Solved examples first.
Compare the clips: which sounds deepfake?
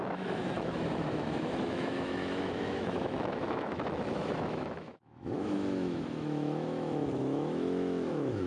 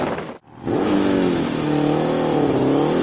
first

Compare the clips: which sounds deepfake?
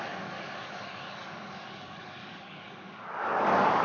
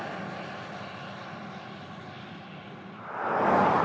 first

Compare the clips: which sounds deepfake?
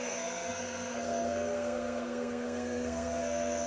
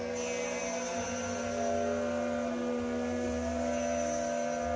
first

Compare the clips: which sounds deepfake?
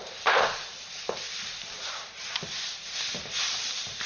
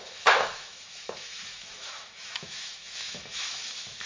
second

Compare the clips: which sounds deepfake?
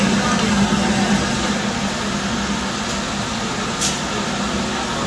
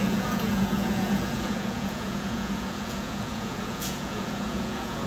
second